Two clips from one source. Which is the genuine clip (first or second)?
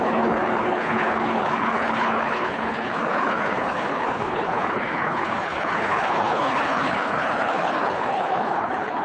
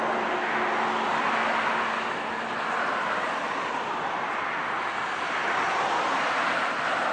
second